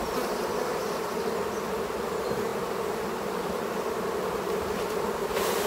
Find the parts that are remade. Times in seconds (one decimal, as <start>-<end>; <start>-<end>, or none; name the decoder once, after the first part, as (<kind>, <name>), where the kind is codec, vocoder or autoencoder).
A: none